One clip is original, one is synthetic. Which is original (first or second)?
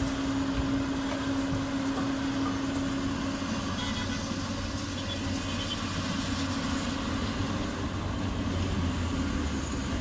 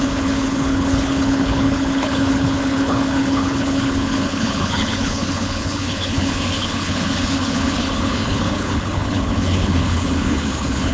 first